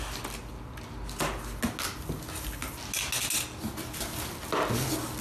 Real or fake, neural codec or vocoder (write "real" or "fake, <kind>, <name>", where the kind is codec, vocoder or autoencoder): real